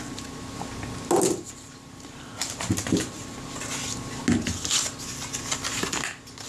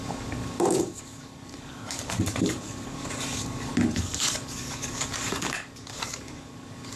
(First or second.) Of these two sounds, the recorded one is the first